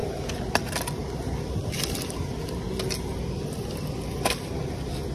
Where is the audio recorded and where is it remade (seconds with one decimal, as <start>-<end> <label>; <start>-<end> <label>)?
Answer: 0.0-5.1 recorded